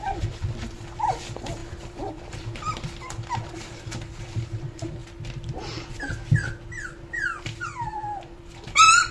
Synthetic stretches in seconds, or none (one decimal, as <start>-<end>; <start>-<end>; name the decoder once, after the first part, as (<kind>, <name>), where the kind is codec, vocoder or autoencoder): 0.0-5.0 (vocoder, BigVGAN v2); 7.4-9.1